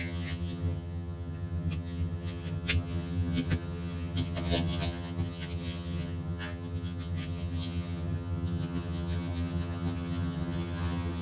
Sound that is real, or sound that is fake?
fake